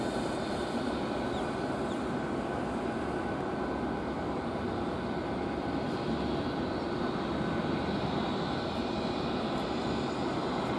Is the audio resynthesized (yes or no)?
no